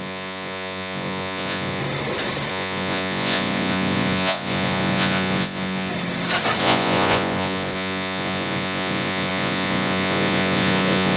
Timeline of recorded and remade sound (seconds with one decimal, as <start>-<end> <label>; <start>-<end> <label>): 0.0-1.8 remade; 1.8-2.5 recorded; 2.5-5.9 remade; 5.9-6.6 recorded; 6.6-11.2 remade